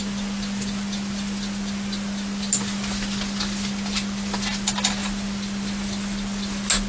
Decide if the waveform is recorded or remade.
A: recorded